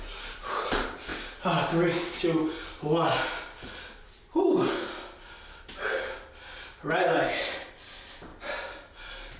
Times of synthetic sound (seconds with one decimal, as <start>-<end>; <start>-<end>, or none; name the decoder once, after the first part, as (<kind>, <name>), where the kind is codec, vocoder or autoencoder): none